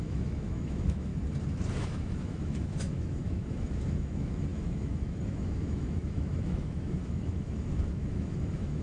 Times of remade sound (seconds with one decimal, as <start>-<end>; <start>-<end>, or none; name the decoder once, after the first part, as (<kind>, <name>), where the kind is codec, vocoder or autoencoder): 0.0-1.1 (autoencoder, DAC-VAE); 1.7-8.8